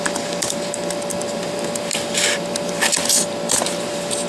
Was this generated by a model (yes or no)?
yes